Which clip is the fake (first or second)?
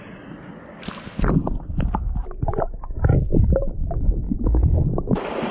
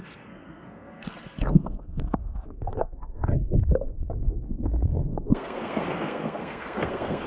second